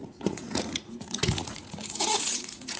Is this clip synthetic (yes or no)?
yes